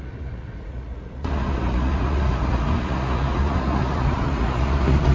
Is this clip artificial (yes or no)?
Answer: yes